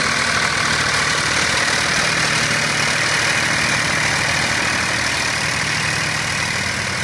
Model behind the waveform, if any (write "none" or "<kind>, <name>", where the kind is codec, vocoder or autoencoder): none